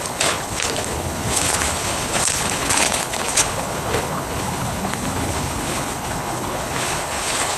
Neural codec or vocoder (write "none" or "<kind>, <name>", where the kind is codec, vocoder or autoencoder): codec, HILCodec